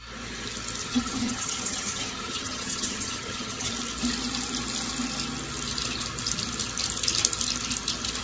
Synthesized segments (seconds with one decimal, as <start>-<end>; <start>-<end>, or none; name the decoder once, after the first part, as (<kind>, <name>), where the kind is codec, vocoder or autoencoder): 0.8-3.7 (vocoder, HiFi-GAN)